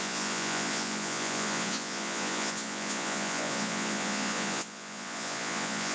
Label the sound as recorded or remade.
remade